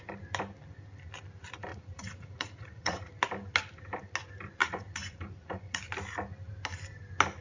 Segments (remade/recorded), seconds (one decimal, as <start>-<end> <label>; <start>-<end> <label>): 0.0-1.7 recorded; 1.7-3.1 remade; 3.1-4.6 recorded; 4.6-5.8 remade; 5.8-7.4 recorded